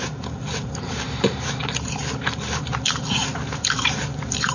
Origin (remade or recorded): remade